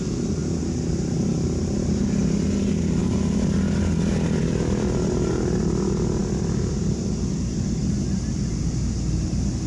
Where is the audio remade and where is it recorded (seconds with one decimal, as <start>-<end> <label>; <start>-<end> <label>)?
0.0-3.0 recorded; 3.0-5.3 remade; 5.3-6.2 recorded; 6.2-7.1 remade; 7.1-9.7 recorded